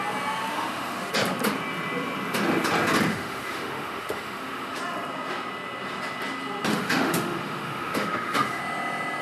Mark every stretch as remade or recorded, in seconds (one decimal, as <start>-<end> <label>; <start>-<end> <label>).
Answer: 0.0-0.5 recorded; 0.5-1.1 remade; 1.1-3.1 recorded; 3.1-4.8 remade; 4.8-6.7 recorded; 6.7-8.6 remade; 8.6-9.2 recorded